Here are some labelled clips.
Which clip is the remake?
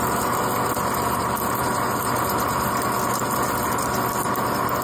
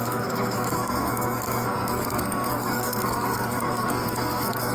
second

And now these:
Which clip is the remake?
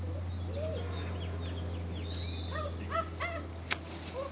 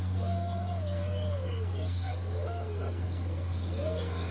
second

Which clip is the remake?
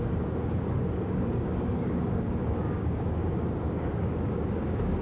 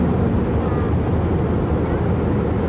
first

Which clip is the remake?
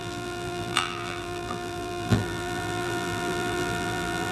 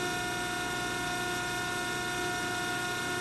first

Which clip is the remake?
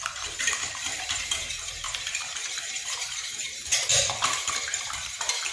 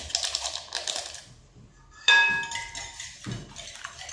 first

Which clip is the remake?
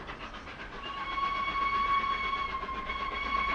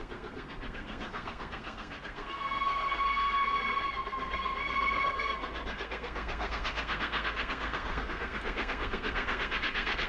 second